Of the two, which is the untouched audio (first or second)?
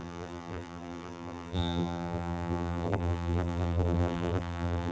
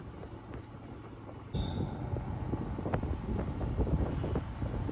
second